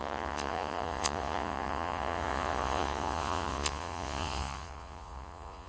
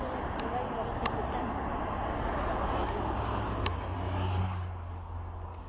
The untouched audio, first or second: second